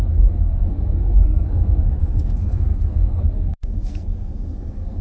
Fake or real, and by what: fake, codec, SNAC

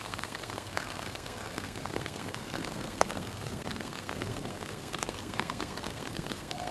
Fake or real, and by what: fake, codec, SNAC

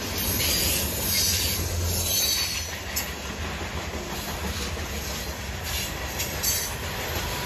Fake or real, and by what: real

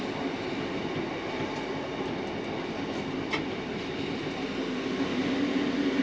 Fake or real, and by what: real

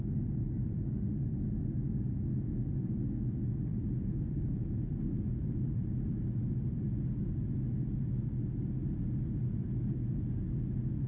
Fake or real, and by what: real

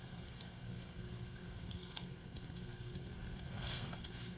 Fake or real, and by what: fake, codec, SNAC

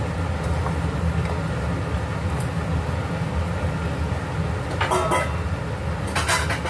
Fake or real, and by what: real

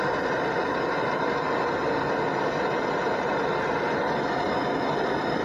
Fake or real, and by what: real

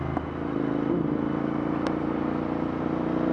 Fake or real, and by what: real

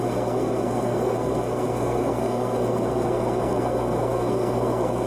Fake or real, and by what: fake, codec, SNAC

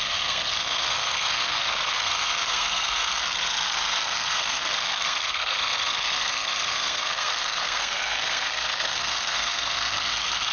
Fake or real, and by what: fake, codec, SNAC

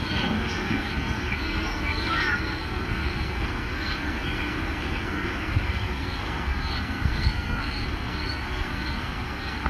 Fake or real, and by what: fake, codec, SNAC